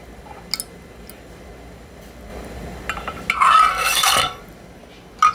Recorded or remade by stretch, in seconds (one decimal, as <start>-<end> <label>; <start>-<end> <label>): 0.0-3.7 recorded; 3.7-4.4 remade; 4.4-5.3 recorded